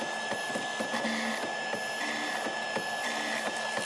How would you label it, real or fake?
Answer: real